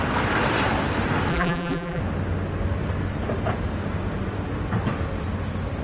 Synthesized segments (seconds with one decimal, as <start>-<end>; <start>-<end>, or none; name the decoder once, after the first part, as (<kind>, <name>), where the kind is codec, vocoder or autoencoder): 1.3-2.0 (vocoder, BigVGAN v2)